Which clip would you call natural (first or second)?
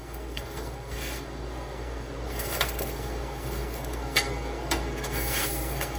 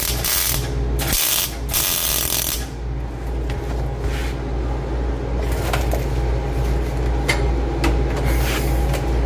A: second